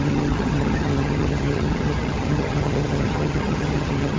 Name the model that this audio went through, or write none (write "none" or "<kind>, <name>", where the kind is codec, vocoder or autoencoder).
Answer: vocoder, HiFi-GAN